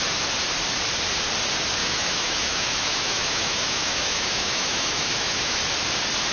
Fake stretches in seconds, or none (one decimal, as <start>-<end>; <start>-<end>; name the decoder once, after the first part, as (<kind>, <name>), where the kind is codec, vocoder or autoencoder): 1.8-5.6 (autoencoder, DAC-VAE)